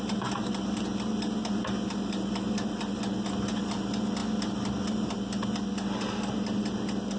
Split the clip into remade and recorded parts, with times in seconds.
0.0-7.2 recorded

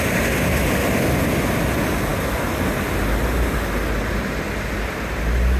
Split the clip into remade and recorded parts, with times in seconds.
0.0-5.6 recorded

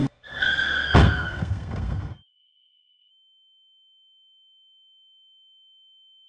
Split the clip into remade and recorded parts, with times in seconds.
0.0-3.1 remade; 3.1-6.3 recorded